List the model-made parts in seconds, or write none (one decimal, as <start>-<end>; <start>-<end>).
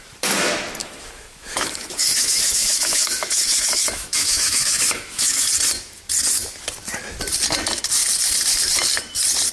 0.8-5.5